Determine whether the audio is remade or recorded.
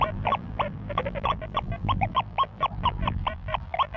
remade